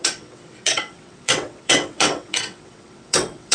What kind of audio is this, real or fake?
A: fake